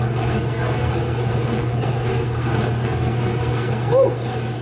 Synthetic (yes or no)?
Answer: yes